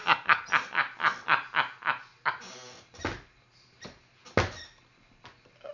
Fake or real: real